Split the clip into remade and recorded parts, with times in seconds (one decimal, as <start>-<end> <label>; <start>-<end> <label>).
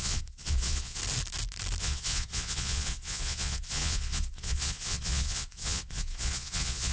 0.0-1.0 remade; 1.0-1.8 recorded; 1.8-6.9 remade